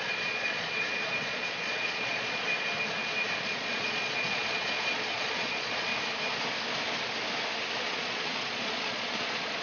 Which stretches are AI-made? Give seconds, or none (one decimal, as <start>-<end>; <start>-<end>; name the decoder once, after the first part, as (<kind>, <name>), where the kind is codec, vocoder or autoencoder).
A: 0.0-2.5 (vocoder, Vocos); 3.4-5.9; 7.8-9.6